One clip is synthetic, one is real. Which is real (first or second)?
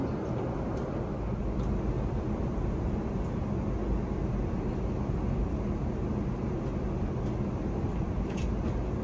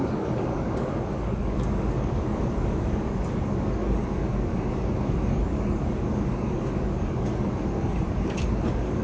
first